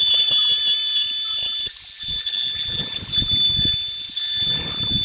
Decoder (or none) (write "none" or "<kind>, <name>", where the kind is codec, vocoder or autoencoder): none